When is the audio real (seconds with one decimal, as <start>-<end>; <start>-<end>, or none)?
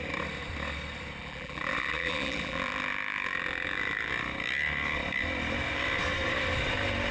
0.0-1.2; 4.1-7.1